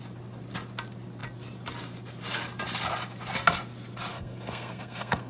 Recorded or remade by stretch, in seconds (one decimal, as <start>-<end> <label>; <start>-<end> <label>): 0.0-4.1 recorded; 4.1-5.3 remade